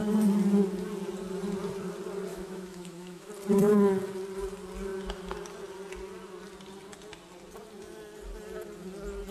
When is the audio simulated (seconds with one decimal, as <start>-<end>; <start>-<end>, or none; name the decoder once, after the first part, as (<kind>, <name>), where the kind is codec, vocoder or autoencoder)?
2.3-3.3 (autoencoder, DAC-VAE)